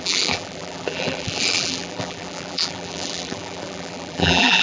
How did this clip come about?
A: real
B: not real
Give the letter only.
B